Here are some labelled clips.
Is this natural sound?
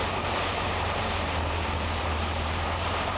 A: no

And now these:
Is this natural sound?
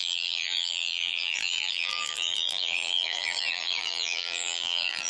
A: no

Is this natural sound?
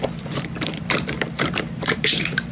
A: no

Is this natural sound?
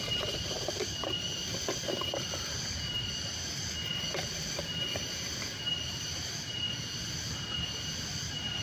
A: yes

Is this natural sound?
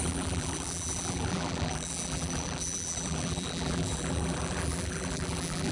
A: no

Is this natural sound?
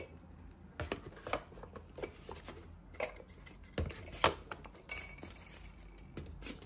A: yes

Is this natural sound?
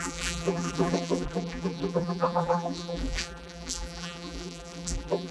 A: no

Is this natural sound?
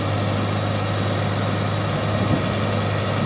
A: yes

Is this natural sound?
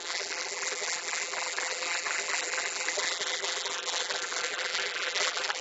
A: no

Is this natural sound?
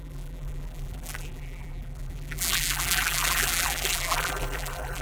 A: no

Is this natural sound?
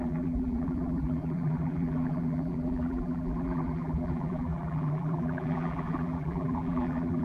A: no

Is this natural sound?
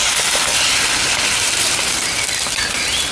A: no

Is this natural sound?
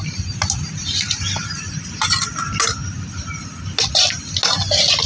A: yes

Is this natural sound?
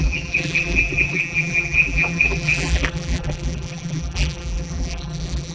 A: no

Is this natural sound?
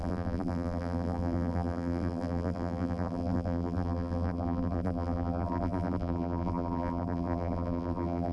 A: no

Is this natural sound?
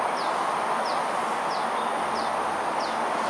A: yes